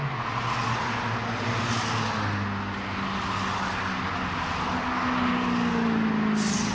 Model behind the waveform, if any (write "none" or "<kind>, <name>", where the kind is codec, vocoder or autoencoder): none